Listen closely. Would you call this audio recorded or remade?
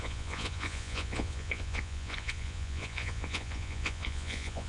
remade